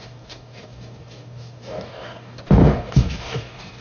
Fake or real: fake